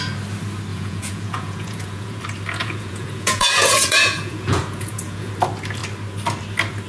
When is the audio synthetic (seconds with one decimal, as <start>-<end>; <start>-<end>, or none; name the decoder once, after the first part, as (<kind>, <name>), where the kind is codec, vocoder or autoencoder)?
0.7-2.2 (vocoder, Vocos); 2.6-5.3